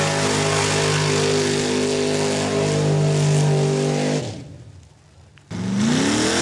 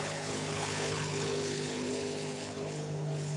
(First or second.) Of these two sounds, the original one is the first